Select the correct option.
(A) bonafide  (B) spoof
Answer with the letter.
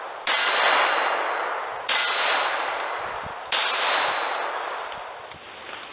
A